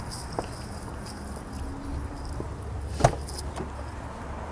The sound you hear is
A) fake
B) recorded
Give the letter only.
B